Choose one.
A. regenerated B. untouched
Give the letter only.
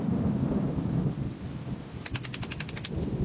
B